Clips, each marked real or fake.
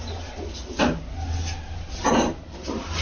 real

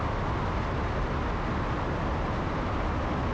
real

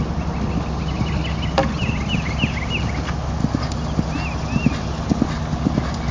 real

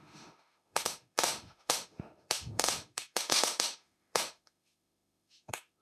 fake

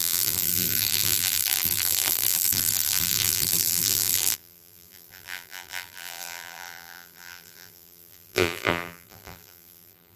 fake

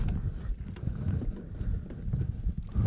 real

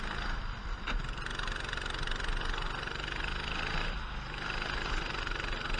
real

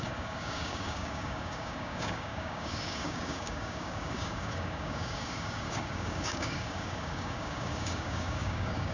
fake